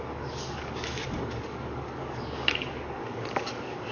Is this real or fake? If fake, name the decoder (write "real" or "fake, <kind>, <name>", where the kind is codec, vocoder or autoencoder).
fake, codec, DAC